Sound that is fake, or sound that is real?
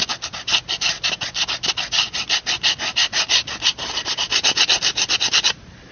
real